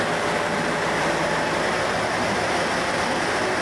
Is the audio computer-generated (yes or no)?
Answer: no